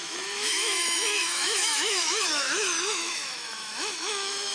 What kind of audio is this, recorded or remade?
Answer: remade